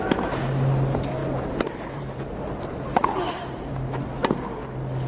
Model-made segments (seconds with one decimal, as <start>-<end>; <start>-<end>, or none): 1.2-3.7